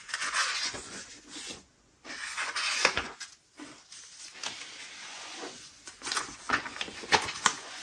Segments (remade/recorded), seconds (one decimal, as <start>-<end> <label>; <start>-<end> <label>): 0.0-3.3 remade; 3.3-5.0 recorded; 5.0-7.8 remade